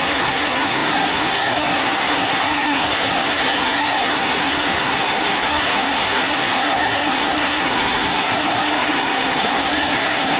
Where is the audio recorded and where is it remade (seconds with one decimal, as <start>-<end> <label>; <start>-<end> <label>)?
0.0-10.4 remade

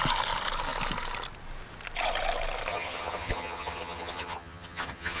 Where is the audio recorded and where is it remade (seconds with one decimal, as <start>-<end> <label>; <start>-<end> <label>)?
0.0-2.7 recorded; 2.7-5.2 remade

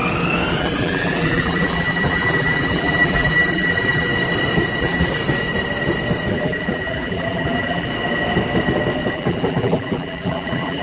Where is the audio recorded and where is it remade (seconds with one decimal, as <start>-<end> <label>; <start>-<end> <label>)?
0.0-0.6 recorded; 0.6-4.1 remade; 4.1-4.8 recorded; 4.8-5.2 remade; 5.2-6.3 recorded; 6.3-7.9 remade; 7.9-9.1 recorded; 9.1-10.8 remade

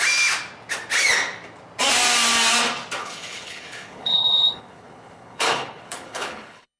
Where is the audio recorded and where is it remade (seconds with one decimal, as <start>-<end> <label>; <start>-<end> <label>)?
0.0-3.0 recorded; 3.0-6.8 remade

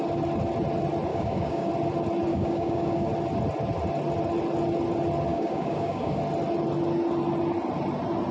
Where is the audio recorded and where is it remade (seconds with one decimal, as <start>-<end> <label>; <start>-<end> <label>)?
0.0-1.1 recorded; 1.1-1.7 remade; 1.7-2.3 recorded; 2.3-3.1 remade; 3.1-5.3 recorded; 5.3-6.2 remade; 6.2-8.3 recorded

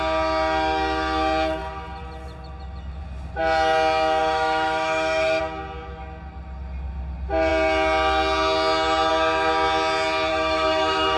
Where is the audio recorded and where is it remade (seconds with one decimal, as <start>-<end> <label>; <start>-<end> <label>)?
0.0-4.2 recorded; 4.2-5.4 remade; 5.4-10.3 recorded; 10.3-11.2 remade

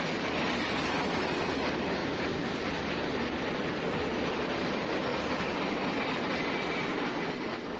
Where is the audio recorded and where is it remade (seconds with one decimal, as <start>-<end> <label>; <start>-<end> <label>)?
0.0-7.8 recorded

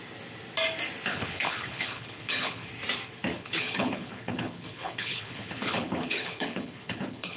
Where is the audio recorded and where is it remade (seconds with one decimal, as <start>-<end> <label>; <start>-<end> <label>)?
0.0-1.1 recorded; 1.1-2.7 remade; 2.7-3.3 recorded; 3.3-7.4 remade